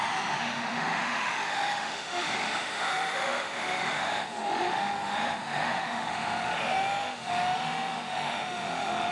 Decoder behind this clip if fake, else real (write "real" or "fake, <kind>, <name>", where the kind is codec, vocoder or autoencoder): fake, autoencoder, DAC-VAE